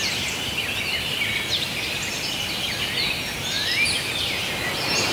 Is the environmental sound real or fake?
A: fake